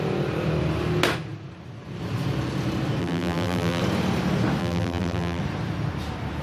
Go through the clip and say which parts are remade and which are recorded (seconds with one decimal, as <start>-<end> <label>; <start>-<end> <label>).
0.0-3.0 recorded; 3.0-3.8 remade; 3.8-4.6 recorded; 4.6-5.4 remade; 5.4-6.4 recorded